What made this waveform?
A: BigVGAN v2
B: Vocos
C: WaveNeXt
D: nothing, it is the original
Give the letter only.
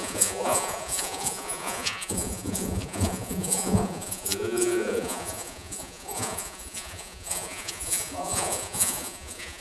B